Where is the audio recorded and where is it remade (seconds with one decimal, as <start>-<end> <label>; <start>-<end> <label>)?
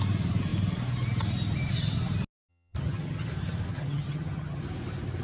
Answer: 0.0-2.5 recorded; 2.5-3.3 remade; 3.3-3.7 recorded; 3.7-4.6 remade; 4.6-5.2 recorded